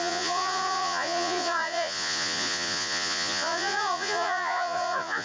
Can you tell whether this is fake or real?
fake